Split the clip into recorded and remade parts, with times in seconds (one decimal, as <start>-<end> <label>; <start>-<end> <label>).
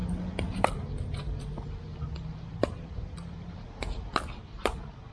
0.0-5.1 recorded